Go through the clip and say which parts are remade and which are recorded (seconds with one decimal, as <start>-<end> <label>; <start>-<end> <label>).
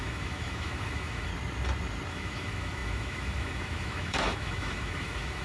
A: 0.0-1.3 remade; 1.3-2.1 recorded; 2.1-5.4 remade